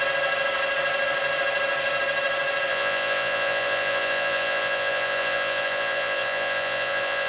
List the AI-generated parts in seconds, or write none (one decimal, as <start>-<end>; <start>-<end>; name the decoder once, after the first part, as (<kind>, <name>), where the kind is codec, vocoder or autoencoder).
2.7-7.3 (vocoder, Vocos)